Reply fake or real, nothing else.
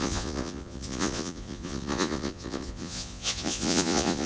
fake